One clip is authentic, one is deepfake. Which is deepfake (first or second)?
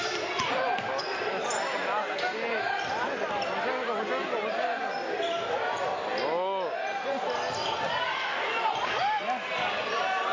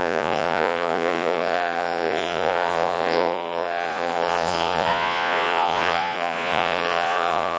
second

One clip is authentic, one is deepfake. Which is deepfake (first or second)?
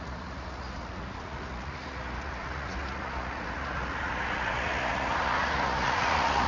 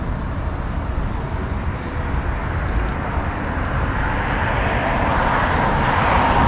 first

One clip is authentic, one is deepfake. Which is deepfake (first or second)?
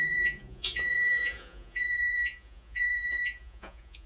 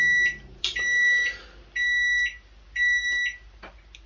first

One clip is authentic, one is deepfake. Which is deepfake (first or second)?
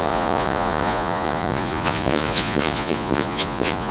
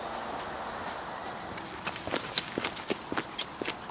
first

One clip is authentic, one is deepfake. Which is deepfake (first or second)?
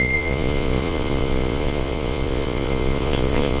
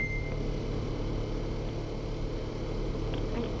first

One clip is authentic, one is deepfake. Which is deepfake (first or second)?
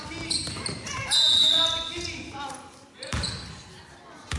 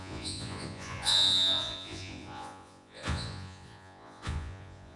second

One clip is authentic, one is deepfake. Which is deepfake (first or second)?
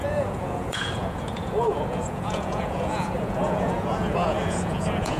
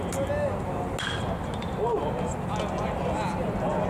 first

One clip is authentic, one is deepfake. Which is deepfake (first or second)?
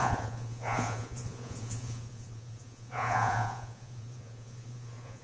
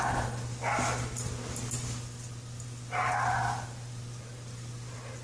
first